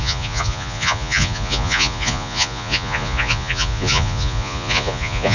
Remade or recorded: remade